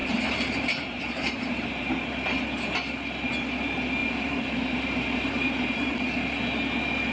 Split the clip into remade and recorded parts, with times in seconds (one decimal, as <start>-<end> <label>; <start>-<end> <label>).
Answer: 0.0-2.1 remade; 2.1-4.0 recorded; 4.0-5.9 remade; 5.9-7.1 recorded